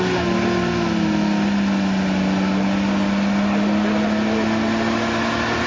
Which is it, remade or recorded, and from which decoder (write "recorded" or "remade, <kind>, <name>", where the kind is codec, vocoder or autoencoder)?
recorded